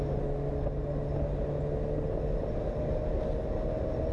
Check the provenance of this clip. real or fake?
real